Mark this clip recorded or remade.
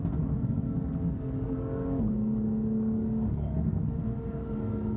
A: remade